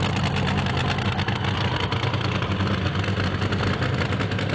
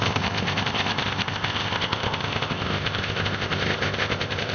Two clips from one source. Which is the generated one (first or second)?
second